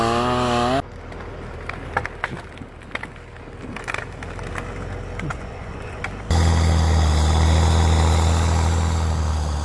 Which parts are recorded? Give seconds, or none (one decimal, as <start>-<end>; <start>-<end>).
0.0-5.3; 6.0-9.6

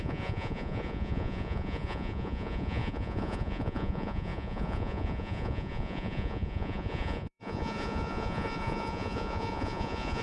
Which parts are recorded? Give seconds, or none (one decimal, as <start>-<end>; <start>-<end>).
none

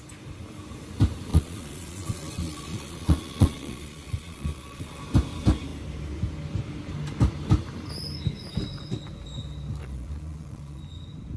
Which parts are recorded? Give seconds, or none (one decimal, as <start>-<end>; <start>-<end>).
0.0-1.3; 5.0-9.8; 10.8-11.4

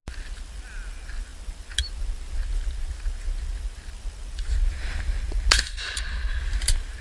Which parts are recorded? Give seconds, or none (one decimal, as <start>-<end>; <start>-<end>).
0.0-7.0